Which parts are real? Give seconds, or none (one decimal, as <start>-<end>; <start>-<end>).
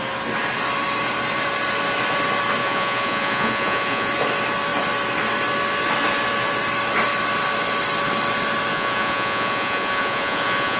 0.0-2.6; 4.1-8.7